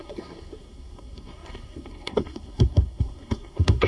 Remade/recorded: remade